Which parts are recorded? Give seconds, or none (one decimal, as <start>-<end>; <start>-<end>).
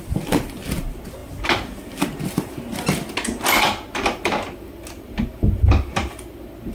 0.0-6.7